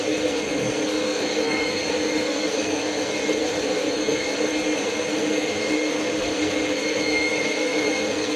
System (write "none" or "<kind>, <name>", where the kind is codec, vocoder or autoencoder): codec, SNAC